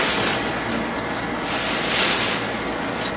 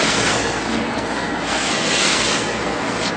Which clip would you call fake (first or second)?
second